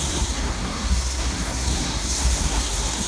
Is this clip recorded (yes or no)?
no